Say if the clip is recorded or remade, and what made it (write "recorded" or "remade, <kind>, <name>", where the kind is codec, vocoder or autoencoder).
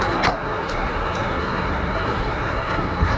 remade, codec, SNAC